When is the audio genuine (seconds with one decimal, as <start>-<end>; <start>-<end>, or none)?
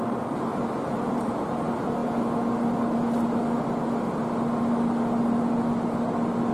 0.0-6.5